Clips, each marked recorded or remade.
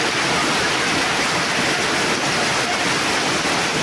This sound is recorded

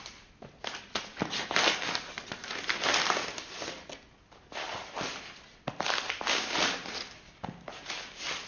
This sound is recorded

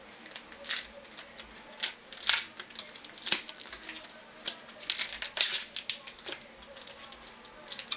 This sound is recorded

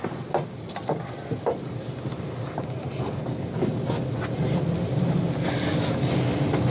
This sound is recorded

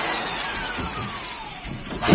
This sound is remade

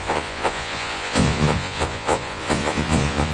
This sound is remade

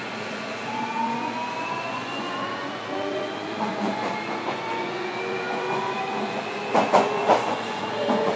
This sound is remade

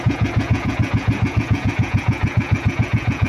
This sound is remade